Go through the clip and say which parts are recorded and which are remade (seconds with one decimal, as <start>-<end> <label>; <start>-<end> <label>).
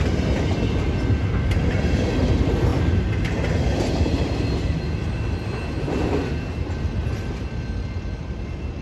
0.0-8.8 recorded